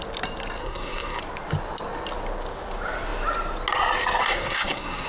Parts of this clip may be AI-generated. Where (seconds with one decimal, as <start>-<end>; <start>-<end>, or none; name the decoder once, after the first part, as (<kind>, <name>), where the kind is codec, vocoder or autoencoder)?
0.6-1.2 (codec, SNAC); 4.2-5.1